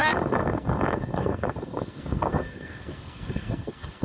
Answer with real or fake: fake